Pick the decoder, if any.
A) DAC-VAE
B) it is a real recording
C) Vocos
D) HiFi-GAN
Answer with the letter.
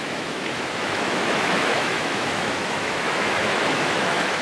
A